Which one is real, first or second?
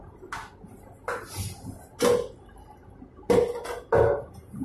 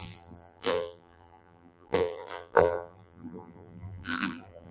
first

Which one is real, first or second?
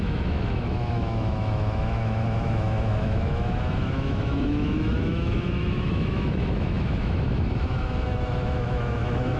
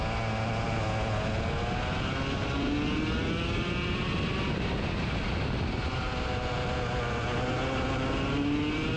second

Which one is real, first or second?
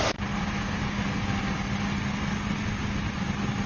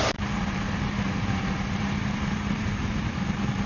first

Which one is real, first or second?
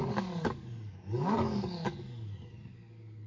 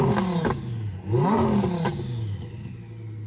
second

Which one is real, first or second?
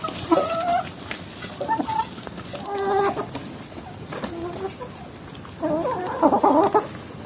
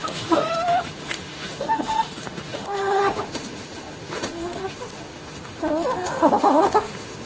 first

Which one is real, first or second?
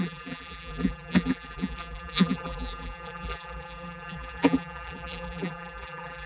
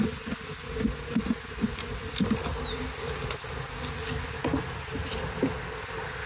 second